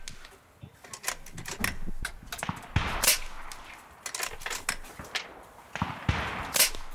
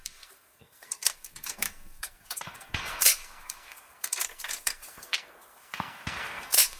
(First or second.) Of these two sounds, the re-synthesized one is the second